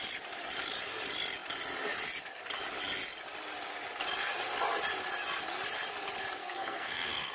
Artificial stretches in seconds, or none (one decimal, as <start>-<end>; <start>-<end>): 6.4-7.3